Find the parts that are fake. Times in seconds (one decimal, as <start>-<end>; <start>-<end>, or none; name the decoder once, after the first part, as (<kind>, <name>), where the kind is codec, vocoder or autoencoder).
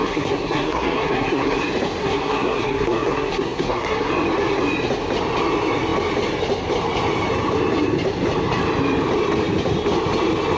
0.0-1.6 (codec, SNAC); 2.0-4.1